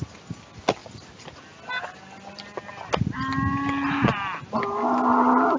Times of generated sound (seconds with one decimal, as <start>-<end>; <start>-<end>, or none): none